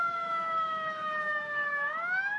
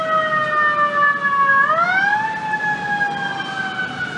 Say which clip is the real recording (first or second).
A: second